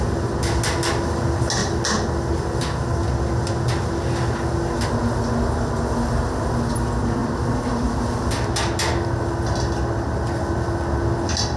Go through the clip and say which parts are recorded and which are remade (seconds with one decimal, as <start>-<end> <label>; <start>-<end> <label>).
0.0-11.6 recorded